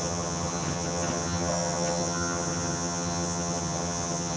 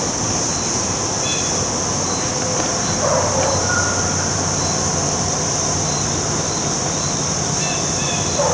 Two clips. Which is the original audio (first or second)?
second